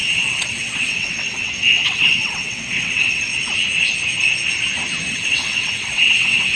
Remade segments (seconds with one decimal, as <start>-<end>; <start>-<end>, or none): 0.0-3.3; 5.1-6.6